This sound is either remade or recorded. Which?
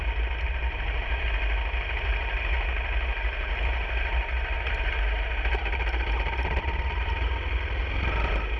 recorded